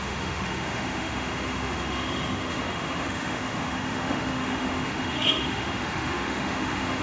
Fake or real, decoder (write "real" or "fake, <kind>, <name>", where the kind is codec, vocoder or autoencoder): fake, autoencoder, DAC-VAE